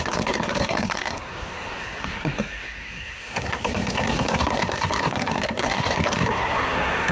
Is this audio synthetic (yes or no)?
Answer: yes